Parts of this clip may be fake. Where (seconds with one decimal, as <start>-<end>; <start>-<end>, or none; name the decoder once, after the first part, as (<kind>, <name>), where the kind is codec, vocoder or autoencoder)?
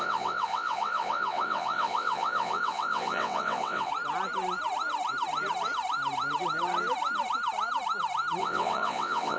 0.0-3.9 (vocoder, WaveNeXt); 8.4-9.4